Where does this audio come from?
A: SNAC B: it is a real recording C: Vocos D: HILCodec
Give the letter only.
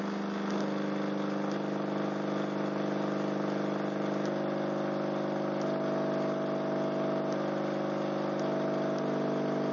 B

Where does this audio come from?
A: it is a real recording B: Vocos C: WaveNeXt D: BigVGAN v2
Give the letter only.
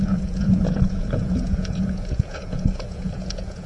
B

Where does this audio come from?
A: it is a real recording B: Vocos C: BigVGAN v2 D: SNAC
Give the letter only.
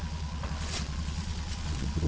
B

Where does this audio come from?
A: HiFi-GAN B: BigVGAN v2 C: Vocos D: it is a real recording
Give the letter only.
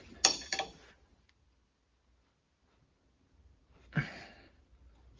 D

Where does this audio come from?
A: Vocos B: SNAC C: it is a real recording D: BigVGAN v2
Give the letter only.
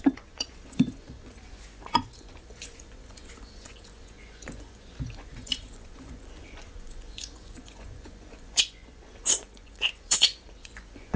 A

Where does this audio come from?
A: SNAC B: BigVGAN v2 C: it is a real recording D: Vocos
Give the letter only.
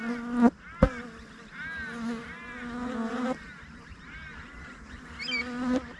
C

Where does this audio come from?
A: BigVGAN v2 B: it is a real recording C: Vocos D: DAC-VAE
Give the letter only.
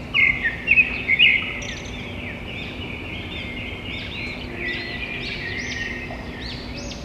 B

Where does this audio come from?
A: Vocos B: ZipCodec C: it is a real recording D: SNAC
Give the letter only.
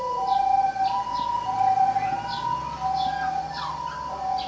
C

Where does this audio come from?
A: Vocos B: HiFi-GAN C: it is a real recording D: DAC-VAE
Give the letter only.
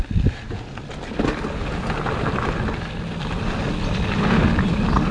C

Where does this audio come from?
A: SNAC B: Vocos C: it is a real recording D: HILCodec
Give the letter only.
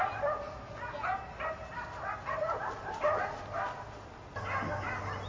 C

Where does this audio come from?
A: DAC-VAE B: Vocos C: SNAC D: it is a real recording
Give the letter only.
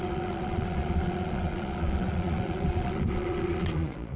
B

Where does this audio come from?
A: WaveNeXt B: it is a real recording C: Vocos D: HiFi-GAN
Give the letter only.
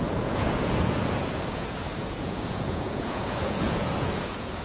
C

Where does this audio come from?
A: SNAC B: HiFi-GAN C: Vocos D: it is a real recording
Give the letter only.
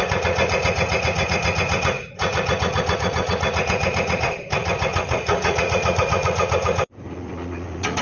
C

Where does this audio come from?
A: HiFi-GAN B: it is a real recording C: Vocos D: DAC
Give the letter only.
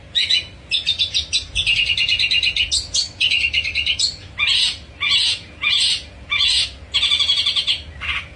B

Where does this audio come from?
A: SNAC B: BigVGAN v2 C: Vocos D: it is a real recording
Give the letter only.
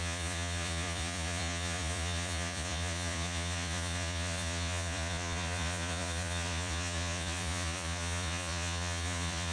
C